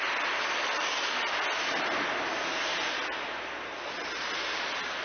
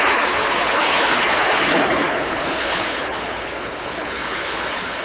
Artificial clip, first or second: second